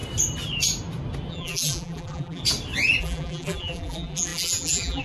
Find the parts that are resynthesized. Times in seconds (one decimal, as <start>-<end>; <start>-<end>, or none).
1.3-2.4; 3.0-5.0